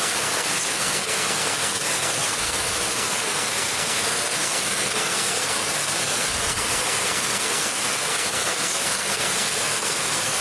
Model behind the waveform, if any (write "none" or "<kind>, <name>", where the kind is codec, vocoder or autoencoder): codec, SNAC